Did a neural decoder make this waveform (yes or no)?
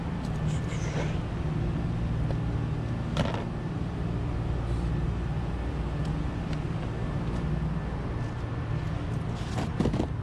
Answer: no